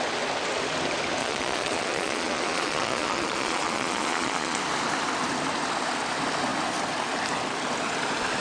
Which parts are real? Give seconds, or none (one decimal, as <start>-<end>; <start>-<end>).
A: 0.0-1.2; 4.6-8.4